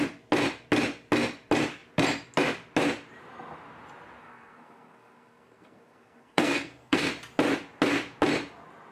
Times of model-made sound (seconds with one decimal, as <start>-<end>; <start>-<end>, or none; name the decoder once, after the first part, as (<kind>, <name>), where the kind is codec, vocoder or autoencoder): 4.2-7.1 (codec, SNAC)